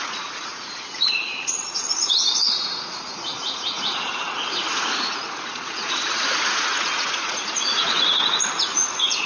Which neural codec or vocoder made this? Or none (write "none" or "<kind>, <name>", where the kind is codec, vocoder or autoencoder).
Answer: vocoder, Vocos